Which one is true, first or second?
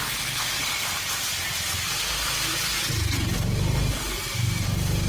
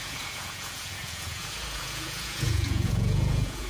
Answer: first